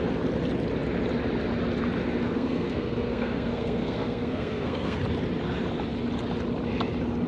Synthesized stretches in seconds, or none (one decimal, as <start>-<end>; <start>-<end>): 2.2-5.0